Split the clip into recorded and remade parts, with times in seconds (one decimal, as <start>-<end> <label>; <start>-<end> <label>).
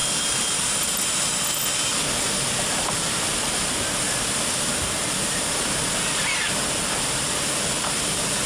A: 0.0-8.5 recorded